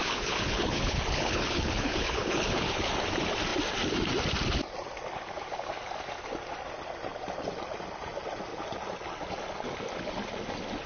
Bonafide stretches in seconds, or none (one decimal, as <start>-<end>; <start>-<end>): 2.9-10.9